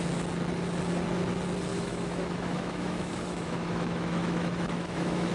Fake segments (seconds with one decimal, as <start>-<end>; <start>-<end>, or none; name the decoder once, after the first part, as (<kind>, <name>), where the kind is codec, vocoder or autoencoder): 1.7-5.3 (autoencoder, DAC-VAE)